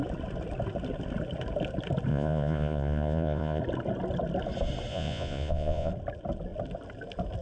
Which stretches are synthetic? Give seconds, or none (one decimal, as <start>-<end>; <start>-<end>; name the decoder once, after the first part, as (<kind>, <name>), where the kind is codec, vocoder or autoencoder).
2.1-3.6 (vocoder, Vocos); 4.9-5.9